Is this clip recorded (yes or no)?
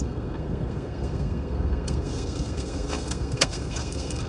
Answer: no